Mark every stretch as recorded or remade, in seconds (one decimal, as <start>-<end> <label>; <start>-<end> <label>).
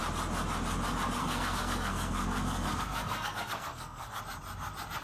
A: 0.0-1.2 recorded; 1.2-4.2 remade; 4.2-5.0 recorded